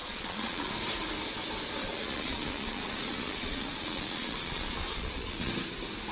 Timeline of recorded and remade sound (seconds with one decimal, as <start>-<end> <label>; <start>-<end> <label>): 0.0-0.7 remade; 0.7-1.8 recorded; 1.8-5.5 remade; 5.5-6.1 recorded